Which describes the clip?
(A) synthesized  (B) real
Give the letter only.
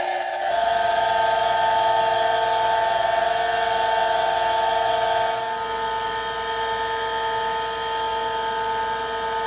B